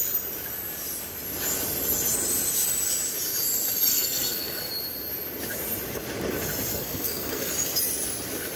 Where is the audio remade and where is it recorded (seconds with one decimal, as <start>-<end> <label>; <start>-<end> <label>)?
0.0-3.9 recorded; 3.9-4.7 remade; 4.7-6.7 recorded; 6.7-7.5 remade; 7.5-8.6 recorded